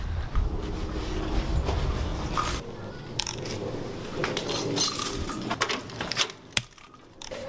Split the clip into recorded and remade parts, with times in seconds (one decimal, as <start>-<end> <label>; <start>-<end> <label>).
0.0-7.5 recorded